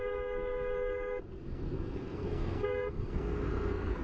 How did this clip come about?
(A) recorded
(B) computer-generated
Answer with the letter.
B